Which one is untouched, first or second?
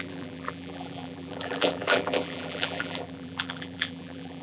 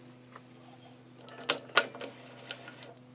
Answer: second